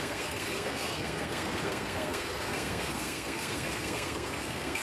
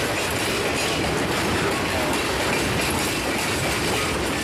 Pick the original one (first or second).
second